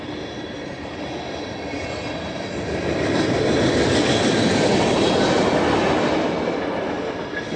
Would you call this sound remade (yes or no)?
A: no